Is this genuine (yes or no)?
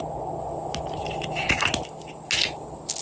yes